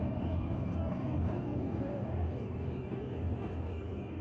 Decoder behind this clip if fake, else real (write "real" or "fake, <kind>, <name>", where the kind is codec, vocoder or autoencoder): fake, codec, DAC